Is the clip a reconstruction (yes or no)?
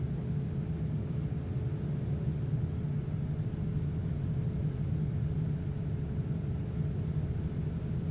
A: no